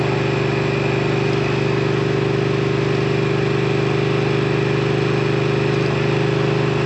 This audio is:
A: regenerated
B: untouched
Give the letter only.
B